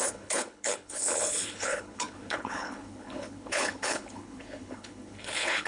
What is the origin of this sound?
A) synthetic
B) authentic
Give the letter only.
A